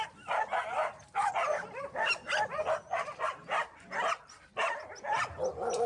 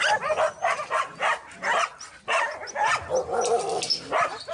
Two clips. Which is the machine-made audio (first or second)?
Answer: first